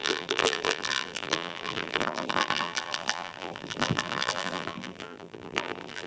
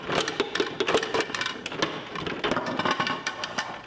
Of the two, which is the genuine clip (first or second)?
second